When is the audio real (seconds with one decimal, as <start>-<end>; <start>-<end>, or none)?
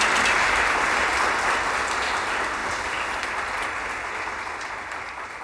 0.0-5.4